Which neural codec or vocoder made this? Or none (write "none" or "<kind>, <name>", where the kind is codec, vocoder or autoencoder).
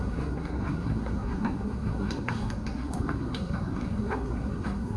codec, SNAC